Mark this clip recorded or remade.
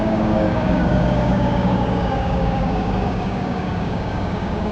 remade